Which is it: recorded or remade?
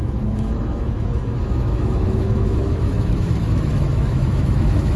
remade